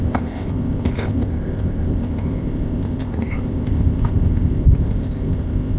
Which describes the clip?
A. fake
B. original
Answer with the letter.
A